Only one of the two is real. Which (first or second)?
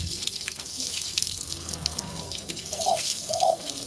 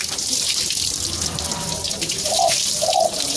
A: second